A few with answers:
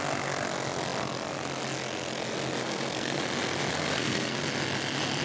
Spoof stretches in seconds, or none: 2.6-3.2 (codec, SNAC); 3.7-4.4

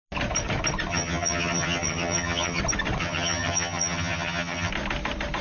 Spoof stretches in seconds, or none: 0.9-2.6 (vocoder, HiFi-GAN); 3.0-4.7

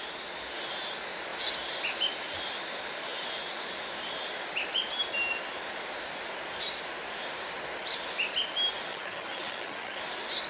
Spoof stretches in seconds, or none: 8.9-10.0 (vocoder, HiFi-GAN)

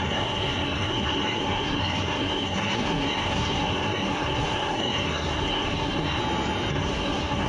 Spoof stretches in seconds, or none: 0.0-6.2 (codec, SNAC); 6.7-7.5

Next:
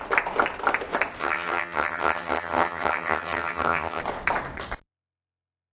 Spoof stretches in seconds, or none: 1.2-4.0 (vocoder, HiFi-GAN)

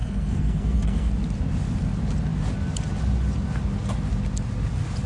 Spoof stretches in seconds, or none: 0.0-1.1 (codec, SNAC)